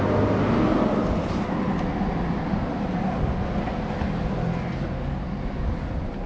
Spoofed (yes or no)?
no